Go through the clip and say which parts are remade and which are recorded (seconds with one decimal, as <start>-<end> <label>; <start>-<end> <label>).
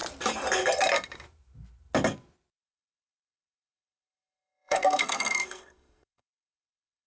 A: 0.0-2.6 recorded; 2.6-7.1 remade